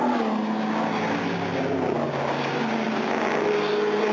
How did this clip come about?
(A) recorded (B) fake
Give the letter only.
A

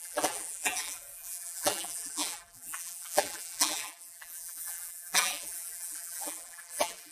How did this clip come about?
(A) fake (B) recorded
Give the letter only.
A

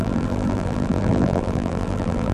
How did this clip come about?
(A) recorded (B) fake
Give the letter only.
B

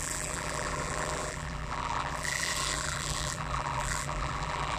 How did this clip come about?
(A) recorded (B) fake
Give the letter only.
B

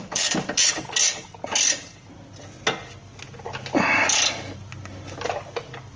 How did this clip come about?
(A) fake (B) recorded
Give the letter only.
B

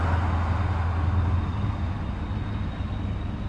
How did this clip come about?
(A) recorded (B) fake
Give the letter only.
A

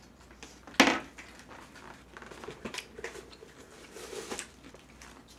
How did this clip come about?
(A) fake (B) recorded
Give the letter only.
B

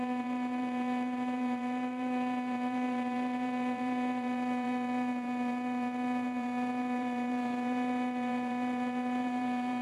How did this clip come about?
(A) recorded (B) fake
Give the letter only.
B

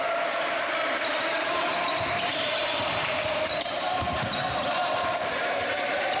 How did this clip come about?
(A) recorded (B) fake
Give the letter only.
B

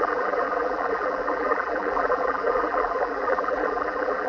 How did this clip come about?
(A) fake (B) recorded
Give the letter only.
A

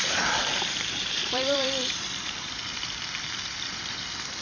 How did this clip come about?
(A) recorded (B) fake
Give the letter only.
B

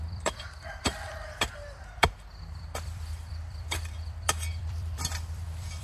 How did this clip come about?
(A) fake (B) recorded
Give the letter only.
A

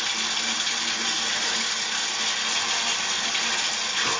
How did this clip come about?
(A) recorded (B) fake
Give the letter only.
A